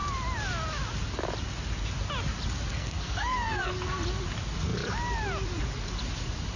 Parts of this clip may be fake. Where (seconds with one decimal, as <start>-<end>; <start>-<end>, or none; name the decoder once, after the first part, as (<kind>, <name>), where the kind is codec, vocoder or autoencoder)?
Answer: 2.7-3.7 (codec, SNAC)